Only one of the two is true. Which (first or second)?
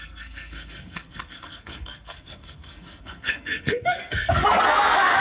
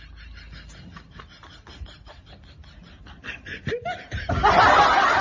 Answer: second